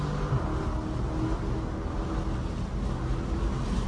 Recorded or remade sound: recorded